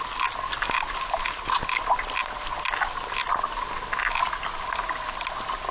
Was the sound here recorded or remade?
recorded